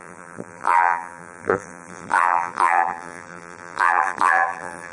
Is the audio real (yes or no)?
no